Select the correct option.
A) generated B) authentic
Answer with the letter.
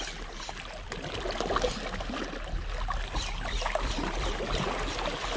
B